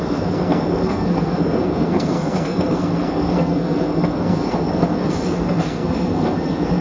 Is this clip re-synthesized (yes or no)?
yes